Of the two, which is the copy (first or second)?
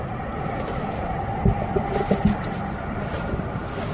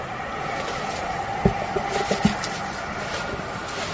first